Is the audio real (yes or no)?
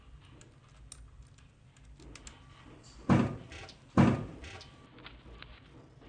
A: yes